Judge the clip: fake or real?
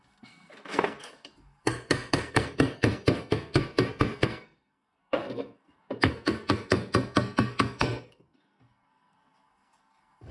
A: fake